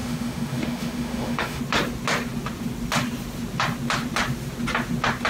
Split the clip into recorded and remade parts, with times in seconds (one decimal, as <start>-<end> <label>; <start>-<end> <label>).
0.0-1.6 remade; 1.6-5.3 recorded